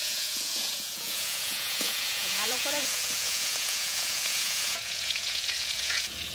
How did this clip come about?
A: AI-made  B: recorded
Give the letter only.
A